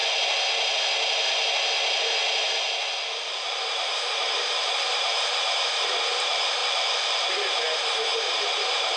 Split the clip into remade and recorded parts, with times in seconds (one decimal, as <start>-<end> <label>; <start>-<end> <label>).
0.0-3.6 recorded; 3.6-6.6 remade; 6.6-7.3 recorded; 7.3-9.0 remade